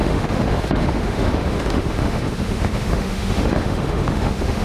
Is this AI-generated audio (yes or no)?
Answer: yes